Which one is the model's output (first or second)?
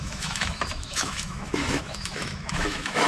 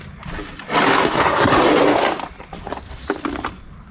first